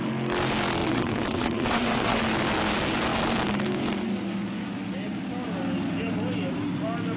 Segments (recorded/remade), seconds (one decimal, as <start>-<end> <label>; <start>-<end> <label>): 0.0-0.8 recorded; 0.8-2.2 remade; 2.2-7.2 recorded